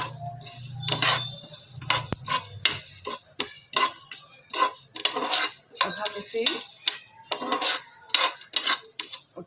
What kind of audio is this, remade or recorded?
recorded